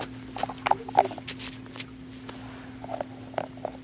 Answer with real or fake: fake